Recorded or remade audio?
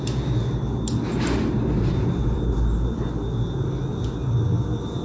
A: recorded